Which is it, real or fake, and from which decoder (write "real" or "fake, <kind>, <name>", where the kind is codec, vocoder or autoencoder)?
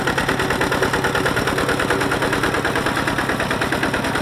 real